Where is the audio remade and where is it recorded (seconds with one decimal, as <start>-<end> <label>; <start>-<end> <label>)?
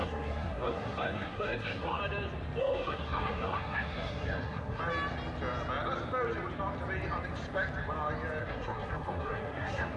0.0-2.0 remade; 2.0-2.6 recorded; 2.6-4.8 remade; 4.8-8.4 recorded; 8.4-10.0 remade